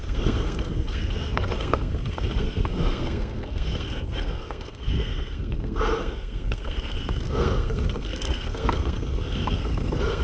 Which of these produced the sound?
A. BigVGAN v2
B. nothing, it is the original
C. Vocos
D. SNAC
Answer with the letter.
D